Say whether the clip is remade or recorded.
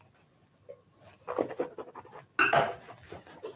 recorded